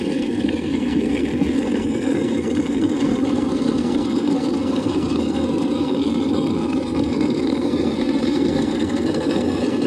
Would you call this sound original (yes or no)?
no